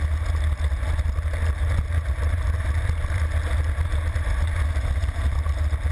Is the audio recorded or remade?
recorded